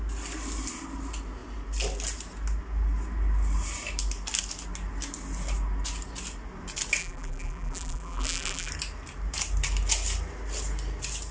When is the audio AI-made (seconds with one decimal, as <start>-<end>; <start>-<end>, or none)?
7.0-8.7